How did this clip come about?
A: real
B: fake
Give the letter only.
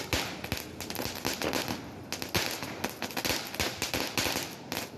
A